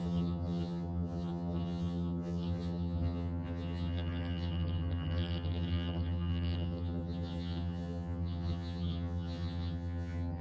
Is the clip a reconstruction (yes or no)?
yes